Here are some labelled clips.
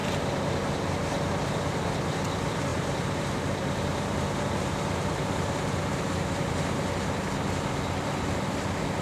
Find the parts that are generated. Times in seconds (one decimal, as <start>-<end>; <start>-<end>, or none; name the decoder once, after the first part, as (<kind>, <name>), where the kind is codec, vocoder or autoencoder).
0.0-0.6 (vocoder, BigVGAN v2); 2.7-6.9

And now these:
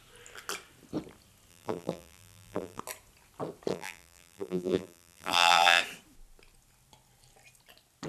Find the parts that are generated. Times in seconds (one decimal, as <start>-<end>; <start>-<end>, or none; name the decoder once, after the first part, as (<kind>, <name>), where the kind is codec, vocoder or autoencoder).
1.5-2.8 (vocoder, BigVGAN v2); 3.7-5.8

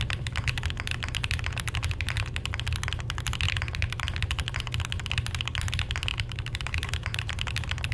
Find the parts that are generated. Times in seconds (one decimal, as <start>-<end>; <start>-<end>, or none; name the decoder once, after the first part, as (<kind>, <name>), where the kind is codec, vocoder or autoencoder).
6.1-7.3 (vocoder, BigVGAN v2)